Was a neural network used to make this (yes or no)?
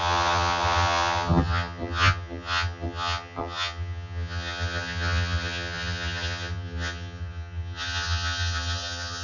yes